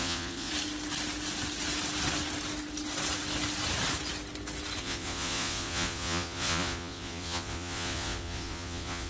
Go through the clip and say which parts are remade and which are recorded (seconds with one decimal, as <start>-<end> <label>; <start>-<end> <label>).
0.0-0.5 remade; 0.5-4.8 recorded; 4.8-9.1 remade